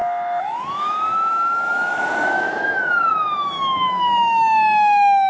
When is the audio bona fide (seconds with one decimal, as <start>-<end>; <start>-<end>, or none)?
none